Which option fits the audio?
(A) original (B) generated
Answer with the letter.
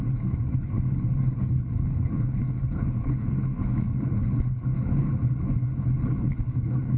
B